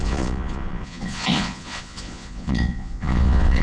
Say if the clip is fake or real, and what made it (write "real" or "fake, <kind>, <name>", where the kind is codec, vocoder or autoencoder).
fake, vocoder, Vocos